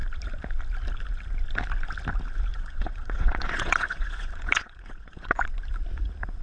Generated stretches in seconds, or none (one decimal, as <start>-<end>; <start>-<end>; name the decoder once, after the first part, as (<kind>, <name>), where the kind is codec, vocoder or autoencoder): 2.5-5.4 (vocoder, Vocos)